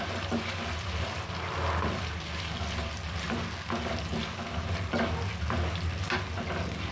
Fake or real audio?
real